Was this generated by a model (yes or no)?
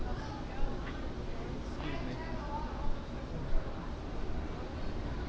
no